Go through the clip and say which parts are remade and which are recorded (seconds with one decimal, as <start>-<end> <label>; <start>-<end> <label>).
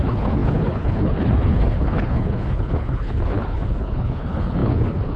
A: 0.0-5.2 remade